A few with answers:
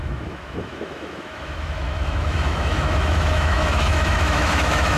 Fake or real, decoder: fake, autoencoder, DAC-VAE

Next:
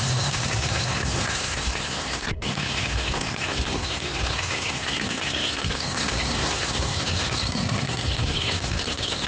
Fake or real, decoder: fake, codec, SNAC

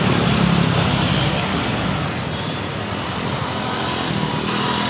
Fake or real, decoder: real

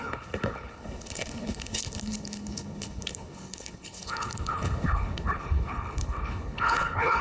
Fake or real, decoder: fake, codec, HILCodec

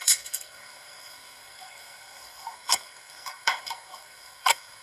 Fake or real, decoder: fake, codec, SNAC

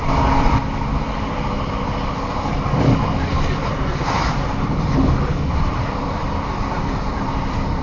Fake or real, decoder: fake, vocoder, BigVGAN v2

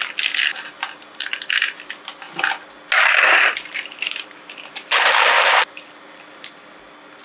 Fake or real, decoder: real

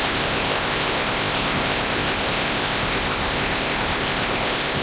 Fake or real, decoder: fake, codec, ZipCodec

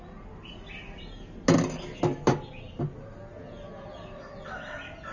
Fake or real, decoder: real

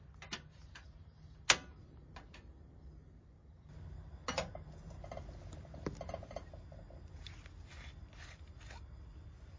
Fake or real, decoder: real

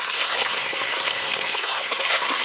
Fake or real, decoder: fake, codec, SNAC